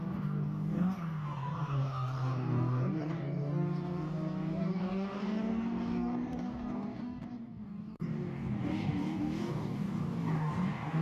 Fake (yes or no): yes